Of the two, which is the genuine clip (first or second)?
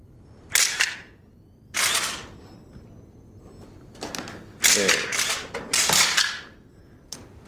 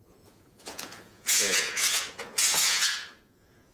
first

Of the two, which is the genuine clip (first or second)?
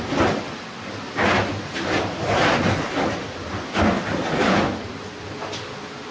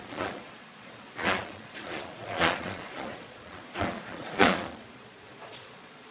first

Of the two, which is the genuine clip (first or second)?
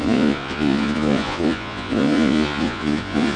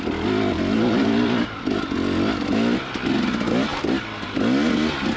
second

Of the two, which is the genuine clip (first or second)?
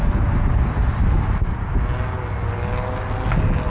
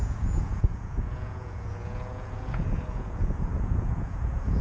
first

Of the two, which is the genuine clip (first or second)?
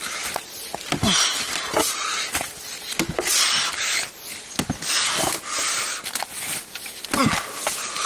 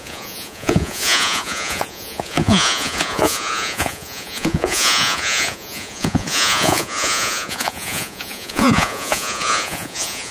first